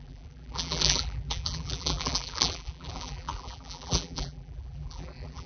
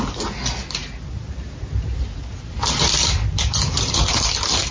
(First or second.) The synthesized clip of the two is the first